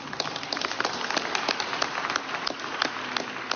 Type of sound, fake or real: real